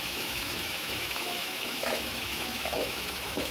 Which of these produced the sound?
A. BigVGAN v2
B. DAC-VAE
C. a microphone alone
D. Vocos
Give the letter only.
B